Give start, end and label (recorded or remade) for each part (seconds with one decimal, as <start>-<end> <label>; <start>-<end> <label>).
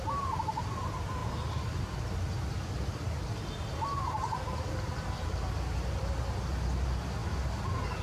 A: 0.0-1.2 recorded; 1.2-5.9 remade; 5.9-8.0 recorded